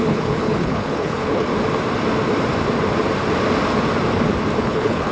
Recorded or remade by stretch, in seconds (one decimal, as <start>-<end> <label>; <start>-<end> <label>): 0.0-1.5 remade; 1.5-4.6 recorded; 4.6-5.1 remade